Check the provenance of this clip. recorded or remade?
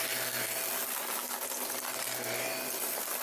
recorded